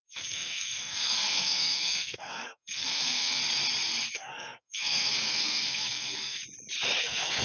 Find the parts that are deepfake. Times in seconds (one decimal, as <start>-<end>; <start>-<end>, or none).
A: 0.0-3.4; 4.1-6.4; 7.0-7.4